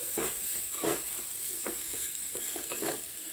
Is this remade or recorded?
remade